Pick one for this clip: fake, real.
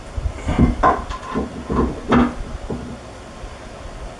real